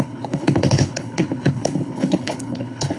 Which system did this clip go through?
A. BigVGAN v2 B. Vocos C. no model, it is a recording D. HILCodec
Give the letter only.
D